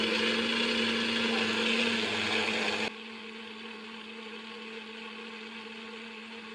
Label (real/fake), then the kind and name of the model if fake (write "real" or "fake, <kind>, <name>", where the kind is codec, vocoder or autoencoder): real